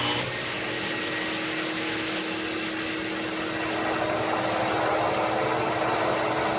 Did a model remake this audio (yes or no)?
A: no